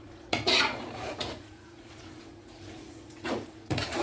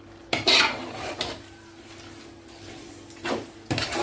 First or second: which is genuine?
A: second